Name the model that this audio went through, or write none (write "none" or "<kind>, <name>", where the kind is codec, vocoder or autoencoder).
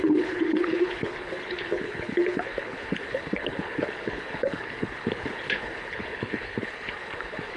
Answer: codec, HILCodec